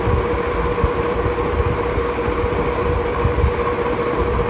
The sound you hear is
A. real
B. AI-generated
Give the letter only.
A